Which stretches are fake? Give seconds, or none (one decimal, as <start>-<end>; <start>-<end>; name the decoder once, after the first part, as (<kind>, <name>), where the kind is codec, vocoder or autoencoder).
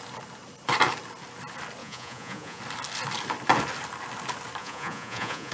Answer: 1.8-2.6 (vocoder, Vocos); 4.6-5.5